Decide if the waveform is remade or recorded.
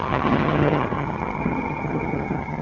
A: remade